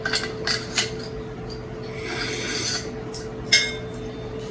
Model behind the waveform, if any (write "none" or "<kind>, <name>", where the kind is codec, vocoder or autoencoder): none